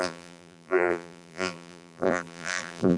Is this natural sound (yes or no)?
no